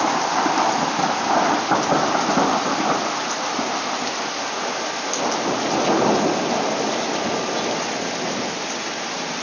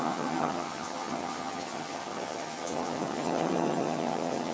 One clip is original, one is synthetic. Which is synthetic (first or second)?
second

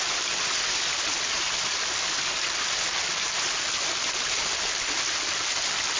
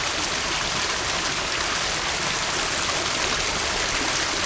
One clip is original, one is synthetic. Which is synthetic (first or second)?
first